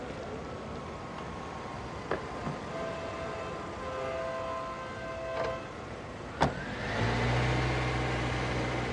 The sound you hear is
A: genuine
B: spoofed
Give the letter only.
A